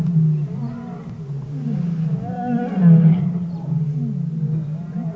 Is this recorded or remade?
recorded